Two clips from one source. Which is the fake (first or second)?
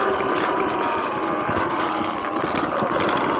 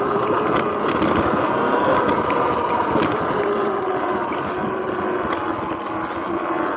first